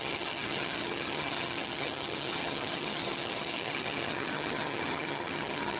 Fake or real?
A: fake